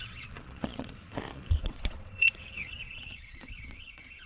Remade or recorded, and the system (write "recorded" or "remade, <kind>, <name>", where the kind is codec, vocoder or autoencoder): remade, vocoder, Vocos